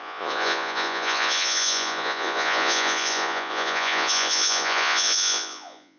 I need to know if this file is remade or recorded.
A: remade